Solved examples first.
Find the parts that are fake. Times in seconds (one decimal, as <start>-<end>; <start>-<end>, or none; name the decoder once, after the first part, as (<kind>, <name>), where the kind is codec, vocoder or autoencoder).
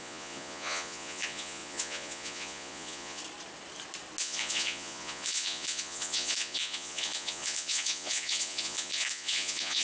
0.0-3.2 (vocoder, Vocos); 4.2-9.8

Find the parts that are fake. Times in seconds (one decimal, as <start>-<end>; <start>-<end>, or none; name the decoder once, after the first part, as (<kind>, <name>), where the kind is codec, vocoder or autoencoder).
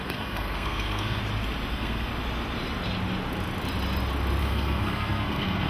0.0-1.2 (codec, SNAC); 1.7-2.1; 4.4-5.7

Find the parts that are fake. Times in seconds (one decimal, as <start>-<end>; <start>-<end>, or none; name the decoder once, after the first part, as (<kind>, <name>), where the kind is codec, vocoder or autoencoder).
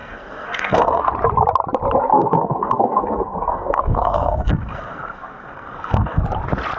0.0-1.1 (codec, SNAC); 2.1-6.2